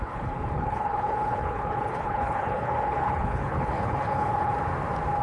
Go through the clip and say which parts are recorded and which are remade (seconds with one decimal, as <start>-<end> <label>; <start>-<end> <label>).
0.0-4.5 remade; 4.5-5.2 recorded